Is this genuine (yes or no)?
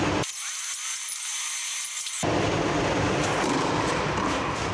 yes